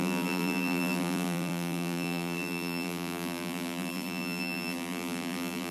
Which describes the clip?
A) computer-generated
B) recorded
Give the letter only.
A